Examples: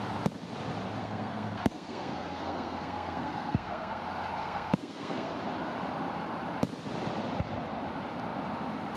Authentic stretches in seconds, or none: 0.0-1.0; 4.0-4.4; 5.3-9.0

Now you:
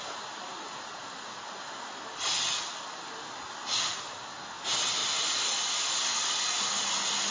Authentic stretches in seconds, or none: 0.0-7.3

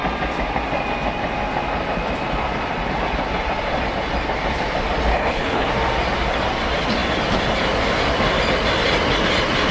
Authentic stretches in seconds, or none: 0.0-5.1; 5.7-9.7